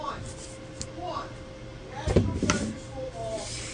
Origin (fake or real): real